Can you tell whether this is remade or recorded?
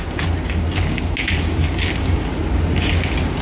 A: recorded